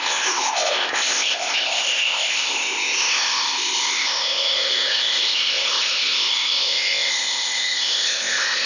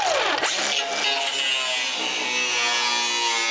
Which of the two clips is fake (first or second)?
first